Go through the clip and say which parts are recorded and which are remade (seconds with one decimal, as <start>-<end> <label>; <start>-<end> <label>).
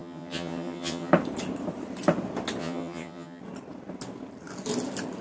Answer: 0.0-1.1 remade; 1.1-2.6 recorded; 2.6-3.4 remade; 3.4-5.2 recorded